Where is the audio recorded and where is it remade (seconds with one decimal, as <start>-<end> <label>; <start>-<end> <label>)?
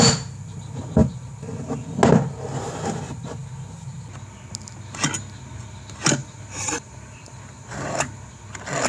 0.0-6.2 recorded; 6.2-8.4 remade; 8.4-8.9 recorded